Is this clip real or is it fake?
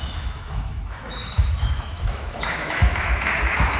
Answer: fake